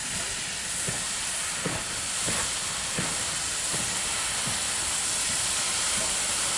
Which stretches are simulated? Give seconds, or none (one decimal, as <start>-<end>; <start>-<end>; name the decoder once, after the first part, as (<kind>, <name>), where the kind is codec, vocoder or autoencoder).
none